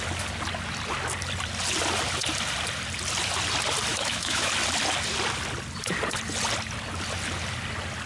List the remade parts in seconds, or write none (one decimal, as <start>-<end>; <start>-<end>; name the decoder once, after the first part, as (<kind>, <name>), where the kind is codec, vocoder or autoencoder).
3.9-4.5 (autoencoder, DAC-VAE)